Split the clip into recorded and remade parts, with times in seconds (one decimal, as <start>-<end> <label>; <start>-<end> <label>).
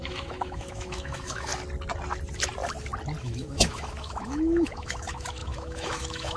0.0-1.5 remade; 1.5-3.2 recorded; 3.2-6.4 remade